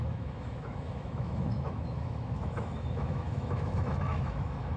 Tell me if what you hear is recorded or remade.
remade